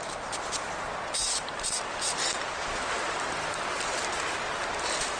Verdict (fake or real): real